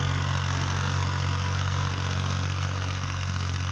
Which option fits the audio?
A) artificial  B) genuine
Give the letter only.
A